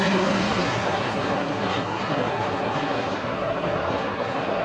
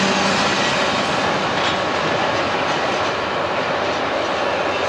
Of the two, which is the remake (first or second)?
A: first